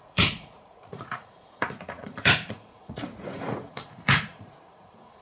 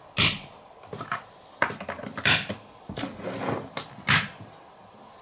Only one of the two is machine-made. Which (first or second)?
first